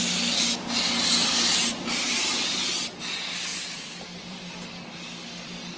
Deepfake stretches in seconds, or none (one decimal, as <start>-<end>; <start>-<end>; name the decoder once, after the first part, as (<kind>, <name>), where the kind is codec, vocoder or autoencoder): 1.5-2.7 (vocoder, BigVGAN v2); 3.5-4.5